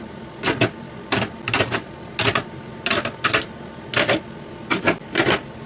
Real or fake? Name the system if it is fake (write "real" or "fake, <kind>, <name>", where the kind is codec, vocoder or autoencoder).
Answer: real